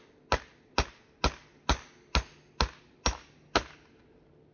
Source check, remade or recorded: recorded